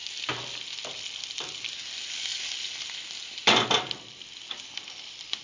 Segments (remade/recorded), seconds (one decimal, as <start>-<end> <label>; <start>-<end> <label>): 0.0-1.4 remade; 1.4-2.3 recorded; 2.3-5.4 remade